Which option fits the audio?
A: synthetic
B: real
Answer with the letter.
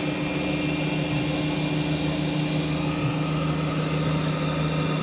B